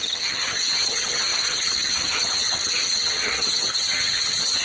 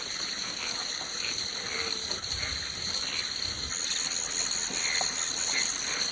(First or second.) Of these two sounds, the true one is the second